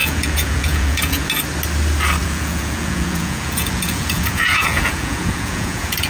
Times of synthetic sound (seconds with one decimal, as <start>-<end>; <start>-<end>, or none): 0.0-1.3; 2.2-6.1